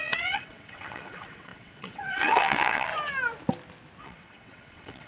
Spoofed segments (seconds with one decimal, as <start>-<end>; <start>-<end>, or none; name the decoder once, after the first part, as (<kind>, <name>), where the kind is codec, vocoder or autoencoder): 0.0-2.9 (vocoder, WaveNeXt); 4.0-5.1